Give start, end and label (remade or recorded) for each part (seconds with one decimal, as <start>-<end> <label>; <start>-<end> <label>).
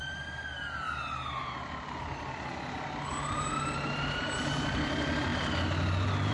0.0-6.3 recorded